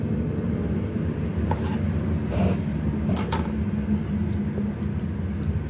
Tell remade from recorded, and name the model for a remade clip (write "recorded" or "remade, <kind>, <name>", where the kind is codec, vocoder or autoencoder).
recorded